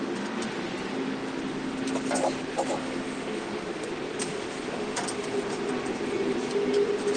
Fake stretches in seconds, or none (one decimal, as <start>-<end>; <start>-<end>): 2.8-3.9; 4.3-5.0